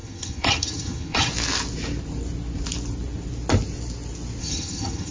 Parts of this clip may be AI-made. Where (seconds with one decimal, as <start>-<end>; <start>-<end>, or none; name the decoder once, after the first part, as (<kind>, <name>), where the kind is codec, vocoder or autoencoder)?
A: 0.0-1.3 (vocoder, HiFi-GAN); 4.4-5.1